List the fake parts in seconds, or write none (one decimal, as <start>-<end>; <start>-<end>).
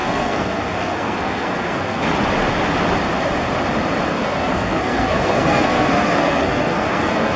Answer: 0.0-2.1; 4.1-7.4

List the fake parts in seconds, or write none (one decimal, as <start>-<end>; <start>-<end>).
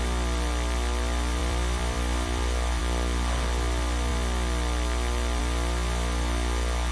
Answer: 1.4-2.8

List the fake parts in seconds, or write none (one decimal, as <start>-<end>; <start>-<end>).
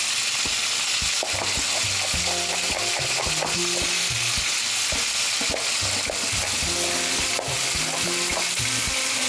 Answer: none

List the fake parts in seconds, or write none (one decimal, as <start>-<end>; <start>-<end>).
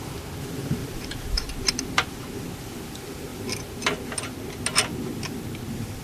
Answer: 0.8-2.7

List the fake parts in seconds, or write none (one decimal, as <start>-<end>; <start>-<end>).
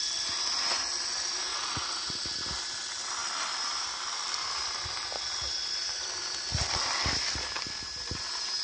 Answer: 1.5-2.1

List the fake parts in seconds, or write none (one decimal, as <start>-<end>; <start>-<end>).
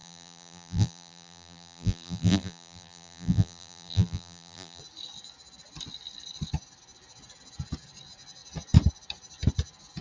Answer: 0.0-4.8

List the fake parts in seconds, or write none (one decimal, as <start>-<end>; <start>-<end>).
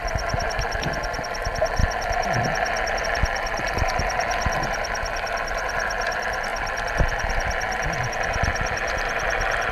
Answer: none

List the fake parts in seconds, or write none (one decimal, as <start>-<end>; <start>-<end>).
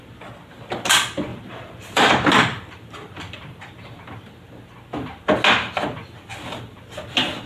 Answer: 1.3-4.3